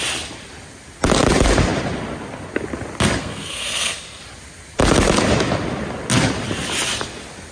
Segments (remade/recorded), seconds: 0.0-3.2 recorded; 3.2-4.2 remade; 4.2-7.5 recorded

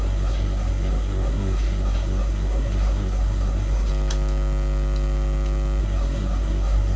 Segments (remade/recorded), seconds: 0.0-3.9 remade; 3.9-5.8 recorded; 5.8-7.0 remade

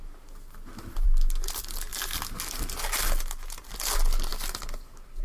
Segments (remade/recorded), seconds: 0.0-5.2 recorded